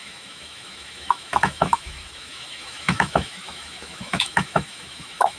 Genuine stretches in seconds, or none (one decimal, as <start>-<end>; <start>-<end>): none